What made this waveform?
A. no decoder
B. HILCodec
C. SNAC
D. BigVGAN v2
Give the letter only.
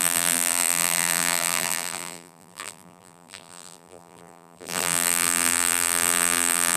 D